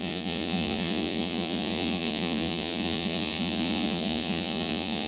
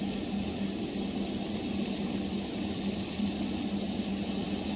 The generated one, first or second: first